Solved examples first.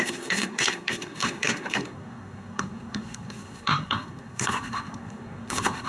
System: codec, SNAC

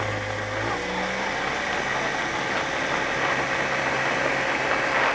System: none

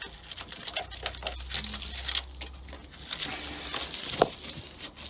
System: none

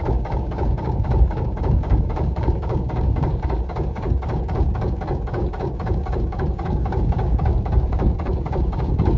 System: codec, DAC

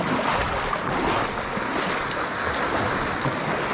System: none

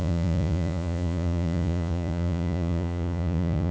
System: vocoder, Vocos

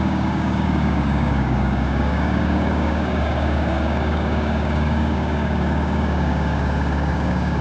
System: codec, DAC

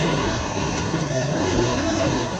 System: codec, SNAC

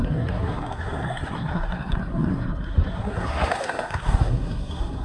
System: codec, SNAC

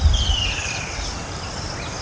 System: none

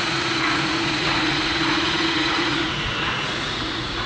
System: vocoder, Vocos